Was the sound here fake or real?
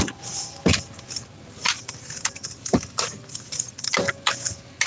real